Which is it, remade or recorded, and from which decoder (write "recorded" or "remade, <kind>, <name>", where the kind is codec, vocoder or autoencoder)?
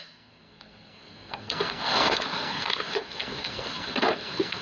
remade, codec, SNAC